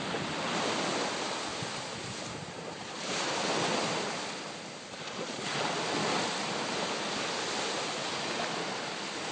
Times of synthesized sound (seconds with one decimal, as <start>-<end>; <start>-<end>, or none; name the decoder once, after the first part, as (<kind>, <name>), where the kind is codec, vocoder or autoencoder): 1.5-3.4 (vocoder, BigVGAN v2)